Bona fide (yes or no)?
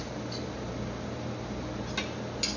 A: yes